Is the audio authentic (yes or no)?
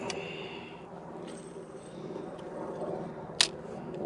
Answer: yes